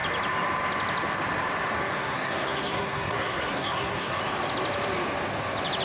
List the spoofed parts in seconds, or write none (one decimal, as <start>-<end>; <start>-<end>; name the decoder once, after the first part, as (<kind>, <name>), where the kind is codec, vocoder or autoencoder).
1.9-4.2 (codec, SNAC)